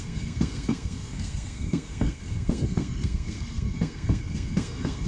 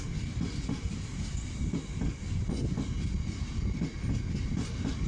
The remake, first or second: first